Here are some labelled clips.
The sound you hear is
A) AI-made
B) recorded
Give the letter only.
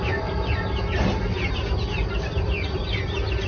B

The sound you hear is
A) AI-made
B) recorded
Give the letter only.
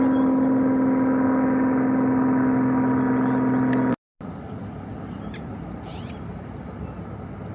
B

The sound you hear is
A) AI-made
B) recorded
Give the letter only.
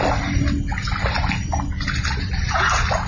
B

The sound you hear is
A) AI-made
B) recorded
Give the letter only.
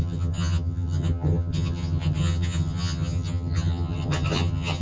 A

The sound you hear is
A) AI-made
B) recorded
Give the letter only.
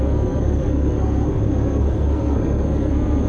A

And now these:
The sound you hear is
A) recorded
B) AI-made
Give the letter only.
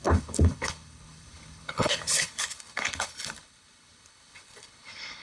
B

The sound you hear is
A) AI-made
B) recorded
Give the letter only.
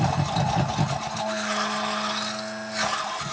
B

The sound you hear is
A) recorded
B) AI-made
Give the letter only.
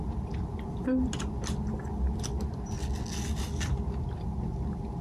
A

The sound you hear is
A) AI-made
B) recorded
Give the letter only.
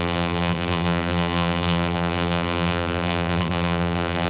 A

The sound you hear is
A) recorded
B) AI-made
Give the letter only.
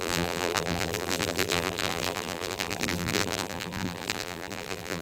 B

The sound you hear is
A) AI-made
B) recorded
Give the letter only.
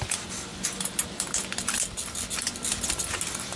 B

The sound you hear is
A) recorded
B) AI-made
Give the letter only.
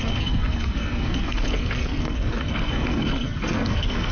B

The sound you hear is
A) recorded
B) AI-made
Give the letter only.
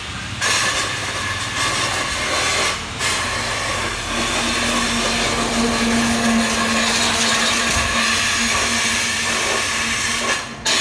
A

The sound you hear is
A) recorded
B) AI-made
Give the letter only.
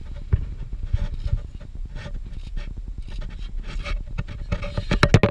A